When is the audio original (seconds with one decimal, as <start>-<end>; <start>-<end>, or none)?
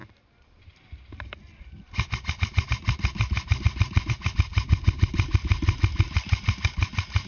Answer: 0.0-7.3